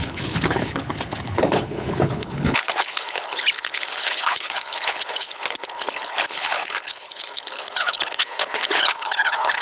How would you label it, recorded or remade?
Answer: remade